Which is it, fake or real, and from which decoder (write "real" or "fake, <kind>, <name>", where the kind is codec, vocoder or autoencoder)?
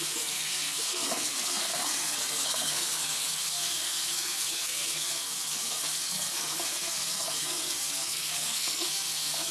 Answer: fake, codec, SNAC